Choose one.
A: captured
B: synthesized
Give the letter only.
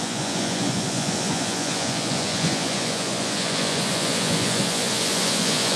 B